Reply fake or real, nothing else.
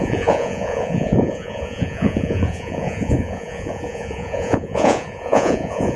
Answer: fake